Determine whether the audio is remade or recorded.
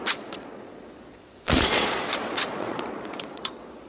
remade